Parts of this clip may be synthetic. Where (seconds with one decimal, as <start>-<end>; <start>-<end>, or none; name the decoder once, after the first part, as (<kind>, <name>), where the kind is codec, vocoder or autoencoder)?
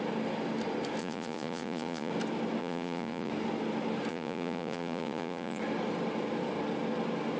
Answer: 1.0-2.1 (vocoder, Vocos); 2.6-3.3; 4.1-5.6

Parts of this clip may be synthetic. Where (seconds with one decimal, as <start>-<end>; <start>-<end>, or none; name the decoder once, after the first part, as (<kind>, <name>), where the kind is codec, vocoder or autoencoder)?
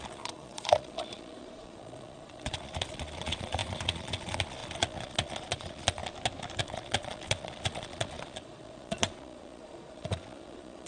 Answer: 0.0-6.0 (vocoder, Vocos); 6.6-10.9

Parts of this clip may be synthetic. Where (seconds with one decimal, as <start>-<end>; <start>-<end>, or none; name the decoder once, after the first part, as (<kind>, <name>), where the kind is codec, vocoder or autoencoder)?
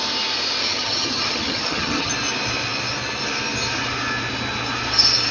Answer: 0.6-2.1 (vocoder, HiFi-GAN)